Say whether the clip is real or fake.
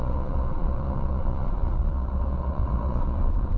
fake